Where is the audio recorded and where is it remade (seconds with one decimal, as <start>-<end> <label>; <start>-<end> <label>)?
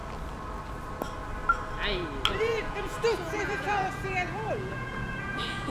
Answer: 0.0-2.3 recorded; 2.3-5.7 remade